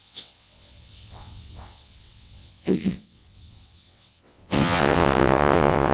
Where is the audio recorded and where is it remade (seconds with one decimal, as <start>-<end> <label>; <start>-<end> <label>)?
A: 0.0-5.9 remade